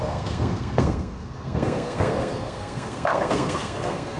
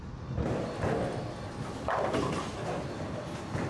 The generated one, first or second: first